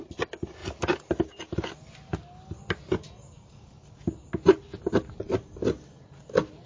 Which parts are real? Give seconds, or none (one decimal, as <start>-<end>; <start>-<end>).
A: 0.0-6.7